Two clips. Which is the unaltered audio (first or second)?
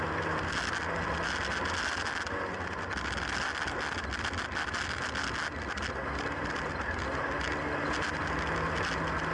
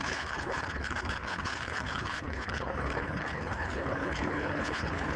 first